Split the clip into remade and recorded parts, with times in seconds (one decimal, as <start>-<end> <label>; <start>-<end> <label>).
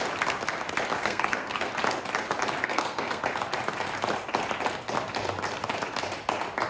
0.0-1.0 recorded; 1.0-1.7 remade; 1.7-2.6 recorded; 2.6-3.2 remade; 3.2-6.7 recorded